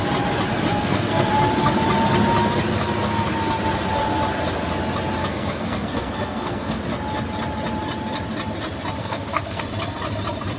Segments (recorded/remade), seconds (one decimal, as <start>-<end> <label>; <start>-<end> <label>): 0.0-0.7 recorded; 0.7-1.3 remade; 1.3-5.2 recorded; 5.2-6.8 remade; 6.8-9.0 recorded; 9.0-9.6 remade; 9.6-10.6 recorded